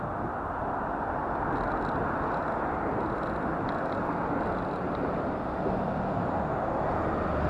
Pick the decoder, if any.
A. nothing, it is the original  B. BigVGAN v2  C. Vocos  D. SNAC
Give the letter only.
A